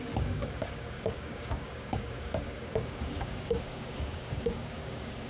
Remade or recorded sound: remade